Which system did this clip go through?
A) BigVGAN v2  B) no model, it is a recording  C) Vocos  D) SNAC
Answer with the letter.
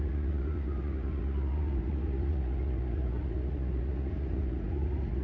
C